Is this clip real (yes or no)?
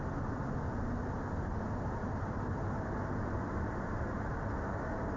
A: yes